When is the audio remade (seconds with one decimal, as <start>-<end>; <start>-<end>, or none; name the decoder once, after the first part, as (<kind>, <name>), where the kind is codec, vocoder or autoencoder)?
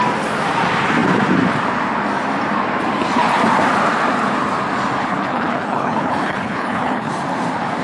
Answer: 5.0-7.1 (codec, HILCodec)